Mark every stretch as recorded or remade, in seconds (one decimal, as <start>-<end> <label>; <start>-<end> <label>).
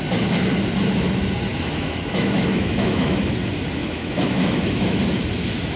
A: 0.0-1.5 recorded; 1.5-3.3 remade; 3.3-3.8 recorded; 3.8-5.0 remade; 5.0-5.8 recorded